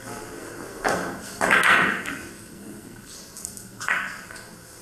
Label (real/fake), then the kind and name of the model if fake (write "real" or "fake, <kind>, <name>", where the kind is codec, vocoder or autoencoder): fake, codec, SNAC